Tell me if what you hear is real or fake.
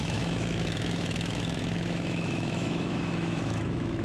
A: fake